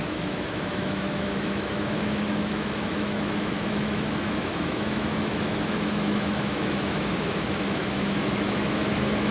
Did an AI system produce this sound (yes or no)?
yes